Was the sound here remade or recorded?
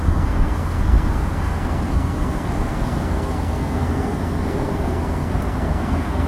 remade